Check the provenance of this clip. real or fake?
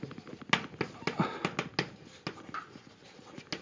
real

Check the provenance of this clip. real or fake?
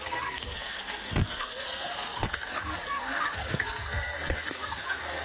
fake